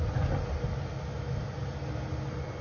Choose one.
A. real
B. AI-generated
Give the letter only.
A